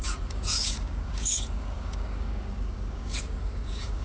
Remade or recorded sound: remade